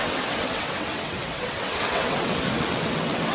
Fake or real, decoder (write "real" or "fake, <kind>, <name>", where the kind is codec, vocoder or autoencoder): fake, vocoder, WaveNeXt